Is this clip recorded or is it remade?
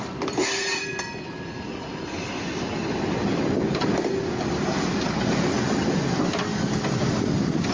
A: recorded